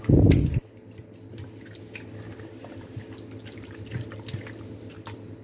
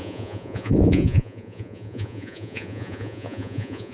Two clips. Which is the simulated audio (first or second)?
second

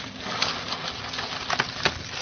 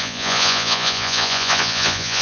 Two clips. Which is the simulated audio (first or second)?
second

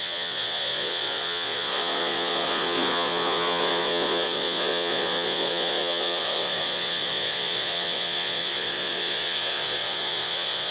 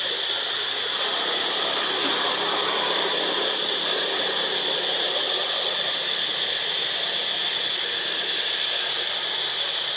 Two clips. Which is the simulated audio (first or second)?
first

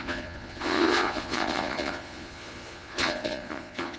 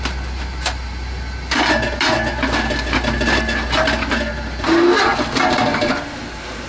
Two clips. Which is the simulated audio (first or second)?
first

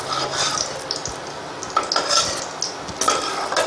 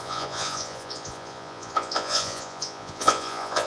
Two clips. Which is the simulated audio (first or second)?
second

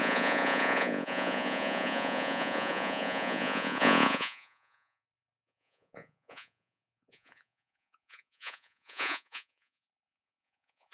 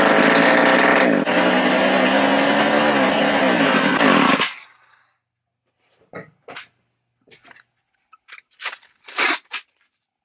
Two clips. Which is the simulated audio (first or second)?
first